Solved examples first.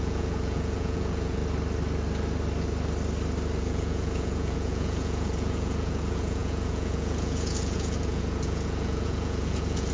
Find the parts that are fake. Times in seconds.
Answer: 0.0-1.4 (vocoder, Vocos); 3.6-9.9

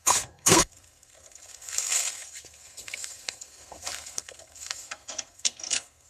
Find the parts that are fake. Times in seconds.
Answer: 0.0-6.1 (codec, SNAC)

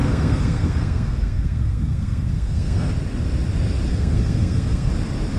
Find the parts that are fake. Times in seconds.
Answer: 0.0-2.9 (codec, SNAC); 3.9-4.9

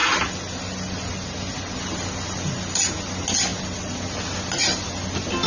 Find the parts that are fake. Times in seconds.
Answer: none